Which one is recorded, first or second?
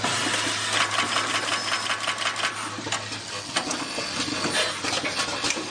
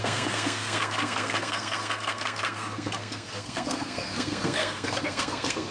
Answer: first